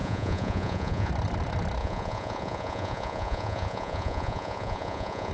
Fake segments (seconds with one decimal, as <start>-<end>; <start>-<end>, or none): 0.0-1.1; 1.8-5.3